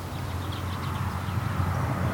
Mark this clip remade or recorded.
recorded